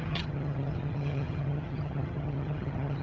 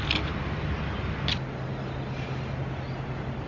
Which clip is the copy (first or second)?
first